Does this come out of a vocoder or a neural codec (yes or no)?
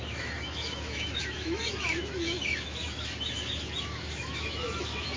yes